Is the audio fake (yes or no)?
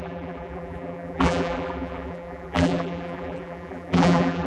yes